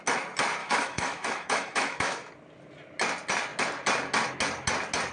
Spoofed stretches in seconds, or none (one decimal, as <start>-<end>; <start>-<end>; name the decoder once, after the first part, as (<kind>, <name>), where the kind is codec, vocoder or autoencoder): 0.6-2.3 (autoencoder, DAC-VAE)